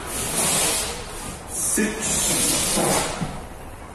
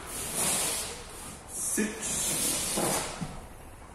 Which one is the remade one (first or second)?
second